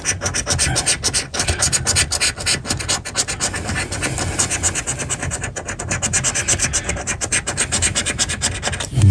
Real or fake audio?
real